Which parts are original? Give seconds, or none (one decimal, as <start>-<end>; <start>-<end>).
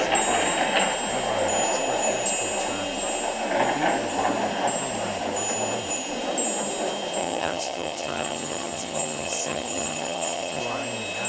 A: 0.0-7.2; 10.6-11.3